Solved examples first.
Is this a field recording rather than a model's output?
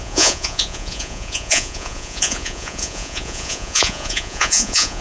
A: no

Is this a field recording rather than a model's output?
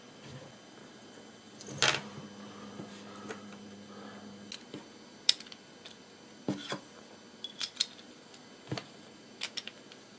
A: yes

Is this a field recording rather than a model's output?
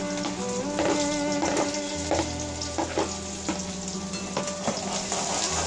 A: yes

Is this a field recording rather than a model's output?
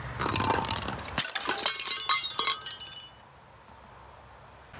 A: yes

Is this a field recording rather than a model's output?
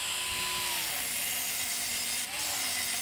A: yes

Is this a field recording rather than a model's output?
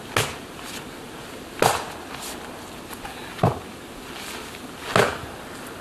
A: yes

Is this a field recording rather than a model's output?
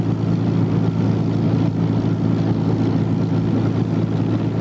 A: yes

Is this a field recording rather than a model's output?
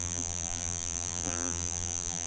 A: no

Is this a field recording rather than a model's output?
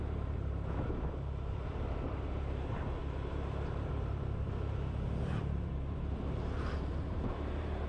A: no